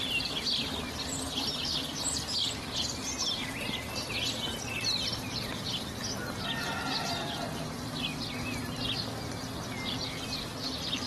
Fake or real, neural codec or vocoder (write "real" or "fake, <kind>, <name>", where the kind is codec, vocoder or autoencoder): real